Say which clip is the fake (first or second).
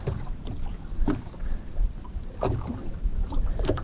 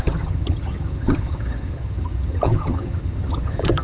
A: second